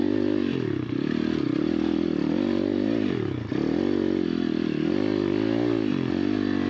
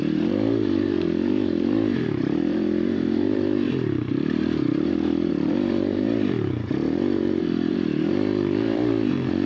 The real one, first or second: first